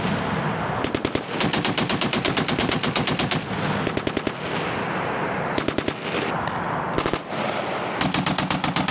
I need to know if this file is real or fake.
real